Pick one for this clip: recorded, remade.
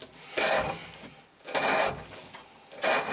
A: recorded